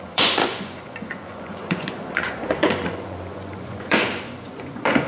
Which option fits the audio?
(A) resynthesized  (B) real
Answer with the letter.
A